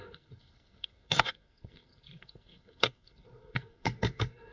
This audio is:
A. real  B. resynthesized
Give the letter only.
B